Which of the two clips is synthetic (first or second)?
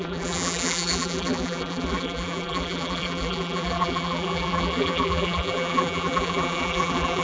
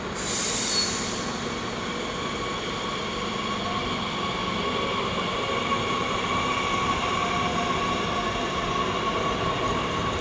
first